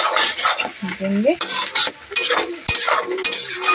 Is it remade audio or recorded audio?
recorded